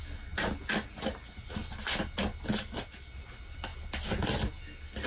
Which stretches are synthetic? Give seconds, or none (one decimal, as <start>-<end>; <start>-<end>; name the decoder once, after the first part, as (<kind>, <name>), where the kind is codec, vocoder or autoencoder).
none